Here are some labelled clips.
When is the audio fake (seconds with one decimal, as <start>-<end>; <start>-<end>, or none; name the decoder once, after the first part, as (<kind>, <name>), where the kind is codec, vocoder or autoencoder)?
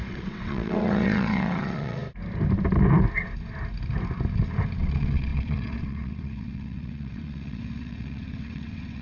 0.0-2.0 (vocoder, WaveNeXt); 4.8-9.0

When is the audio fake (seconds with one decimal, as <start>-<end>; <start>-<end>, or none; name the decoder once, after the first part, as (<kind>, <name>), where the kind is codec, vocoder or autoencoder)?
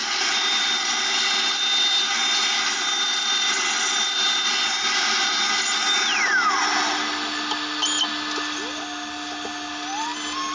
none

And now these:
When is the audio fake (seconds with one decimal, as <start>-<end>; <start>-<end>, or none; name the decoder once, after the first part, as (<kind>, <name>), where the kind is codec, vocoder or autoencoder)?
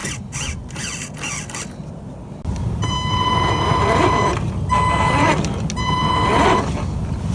none